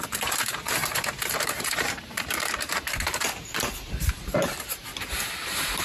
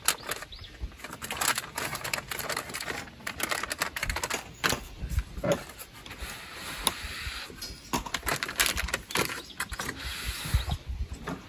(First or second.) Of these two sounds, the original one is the second